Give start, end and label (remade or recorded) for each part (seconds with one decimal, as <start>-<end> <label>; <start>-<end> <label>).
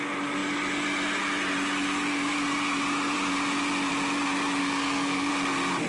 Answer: 0.0-4.6 recorded; 4.6-5.3 remade; 5.3-5.9 recorded